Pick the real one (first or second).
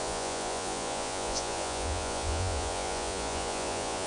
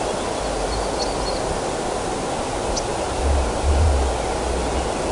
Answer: second